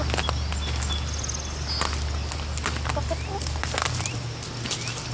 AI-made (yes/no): no